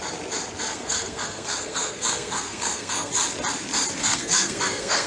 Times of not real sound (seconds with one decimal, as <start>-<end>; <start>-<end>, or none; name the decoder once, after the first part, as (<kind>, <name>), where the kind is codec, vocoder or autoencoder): 0.7-3.1 (codec, SNAC); 4.0-5.1